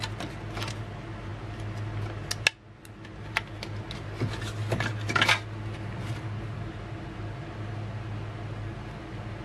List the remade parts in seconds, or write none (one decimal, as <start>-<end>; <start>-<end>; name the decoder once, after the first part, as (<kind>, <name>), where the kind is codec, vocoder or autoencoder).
none